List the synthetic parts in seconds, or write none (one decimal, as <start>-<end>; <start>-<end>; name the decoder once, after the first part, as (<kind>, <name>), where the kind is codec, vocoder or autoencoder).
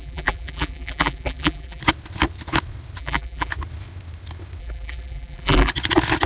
0.0-1.8 (vocoder, BigVGAN v2); 3.0-3.5; 4.6-5.7